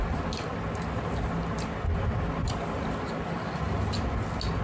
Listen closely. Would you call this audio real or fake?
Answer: real